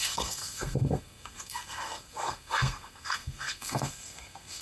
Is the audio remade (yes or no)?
yes